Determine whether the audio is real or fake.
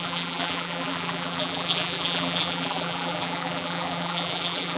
fake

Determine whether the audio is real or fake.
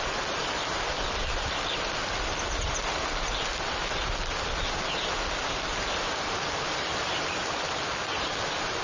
real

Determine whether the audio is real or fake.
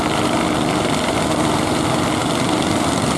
real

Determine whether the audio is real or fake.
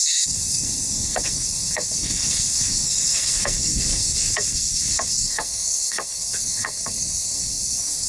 fake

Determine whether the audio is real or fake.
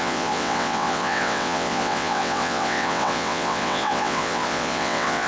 fake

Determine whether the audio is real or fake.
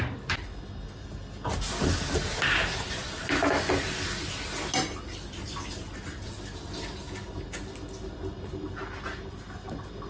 real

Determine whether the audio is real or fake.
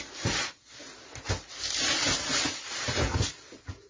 real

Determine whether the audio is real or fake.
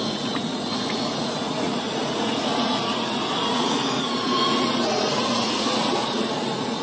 fake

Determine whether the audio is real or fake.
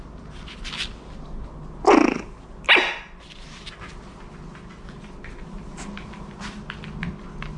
real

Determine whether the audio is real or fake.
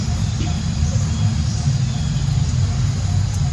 real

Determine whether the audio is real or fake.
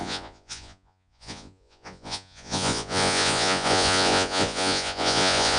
fake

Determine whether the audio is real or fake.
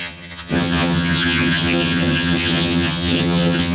fake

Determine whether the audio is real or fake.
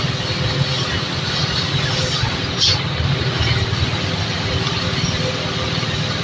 real